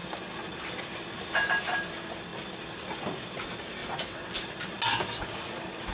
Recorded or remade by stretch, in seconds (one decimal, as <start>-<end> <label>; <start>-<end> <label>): 0.0-3.8 recorded; 3.8-4.3 remade; 4.3-5.9 recorded